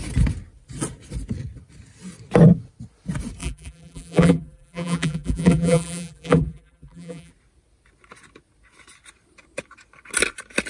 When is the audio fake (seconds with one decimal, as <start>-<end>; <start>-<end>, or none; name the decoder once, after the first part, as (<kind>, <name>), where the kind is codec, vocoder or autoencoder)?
3.4-7.3 (vocoder, BigVGAN v2)